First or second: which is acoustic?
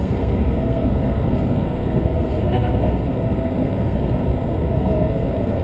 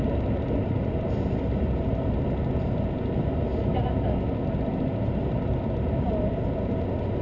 second